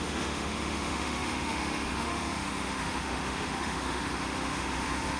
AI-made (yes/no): yes